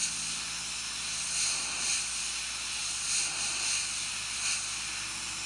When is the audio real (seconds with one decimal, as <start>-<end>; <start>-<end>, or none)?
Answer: 0.0-5.5